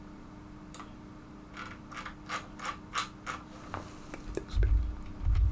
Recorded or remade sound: recorded